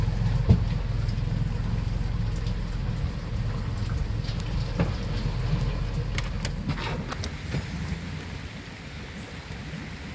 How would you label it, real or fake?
real